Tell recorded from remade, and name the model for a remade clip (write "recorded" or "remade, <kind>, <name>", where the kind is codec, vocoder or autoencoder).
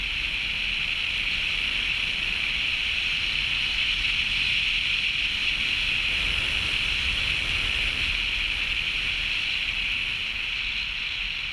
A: recorded